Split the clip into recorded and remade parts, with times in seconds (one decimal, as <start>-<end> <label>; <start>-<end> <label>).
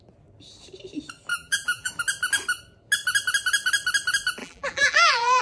0.0-1.3 recorded; 1.3-1.9 remade; 1.9-4.4 recorded; 4.4-5.4 remade